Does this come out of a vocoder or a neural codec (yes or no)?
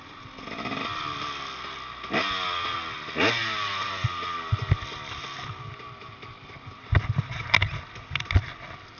no